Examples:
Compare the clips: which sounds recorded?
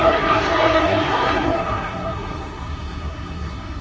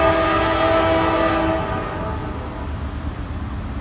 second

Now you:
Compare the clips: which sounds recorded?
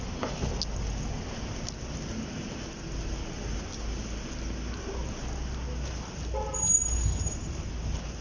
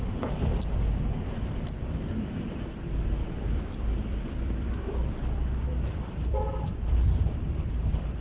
first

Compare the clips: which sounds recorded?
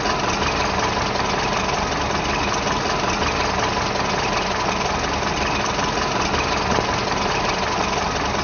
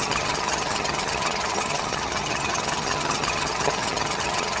first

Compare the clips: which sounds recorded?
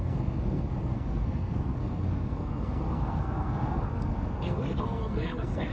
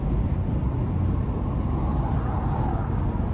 second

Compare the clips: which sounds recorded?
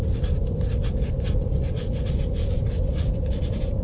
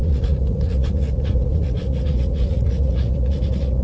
first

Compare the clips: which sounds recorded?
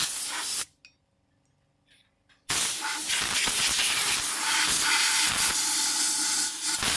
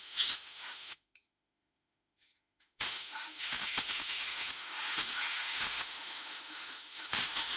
first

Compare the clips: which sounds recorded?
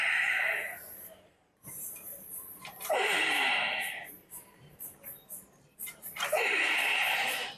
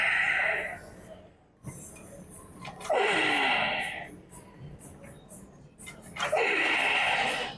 second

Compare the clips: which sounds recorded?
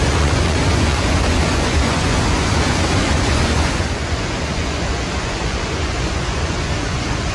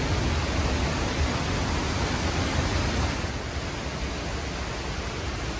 second